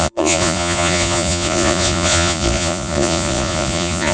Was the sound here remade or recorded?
remade